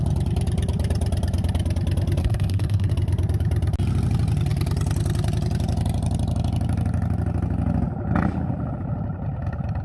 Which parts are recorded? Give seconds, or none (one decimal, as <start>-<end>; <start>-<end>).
0.0-2.2; 2.9-9.8